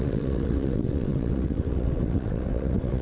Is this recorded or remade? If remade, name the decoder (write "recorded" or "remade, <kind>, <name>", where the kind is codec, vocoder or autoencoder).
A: remade, vocoder, WaveNeXt